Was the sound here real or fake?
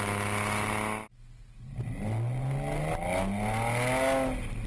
real